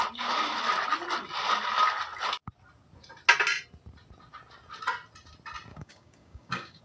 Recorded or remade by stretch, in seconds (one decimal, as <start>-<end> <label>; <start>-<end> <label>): 0.0-5.7 recorded; 5.7-6.8 remade